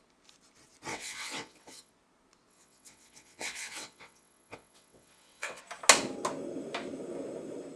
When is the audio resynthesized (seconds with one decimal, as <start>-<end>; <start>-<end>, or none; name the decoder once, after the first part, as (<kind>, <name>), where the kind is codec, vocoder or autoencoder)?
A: 0.9-1.9 (vocoder, WaveNeXt); 2.5-5.6